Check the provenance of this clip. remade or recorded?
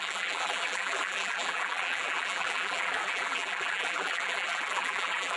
remade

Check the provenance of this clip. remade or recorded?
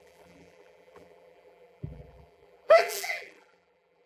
remade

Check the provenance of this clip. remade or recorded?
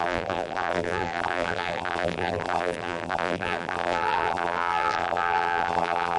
remade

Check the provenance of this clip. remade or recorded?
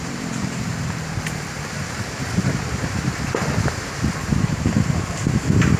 remade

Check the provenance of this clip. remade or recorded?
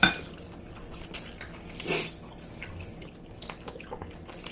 recorded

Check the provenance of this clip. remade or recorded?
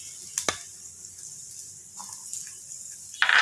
recorded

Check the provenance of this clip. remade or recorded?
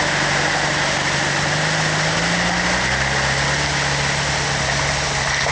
recorded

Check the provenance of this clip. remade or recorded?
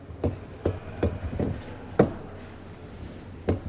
recorded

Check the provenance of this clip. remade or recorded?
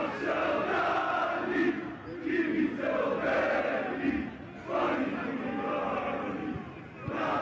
recorded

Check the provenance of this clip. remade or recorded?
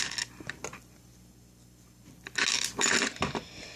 recorded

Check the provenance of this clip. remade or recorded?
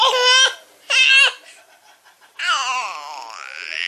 recorded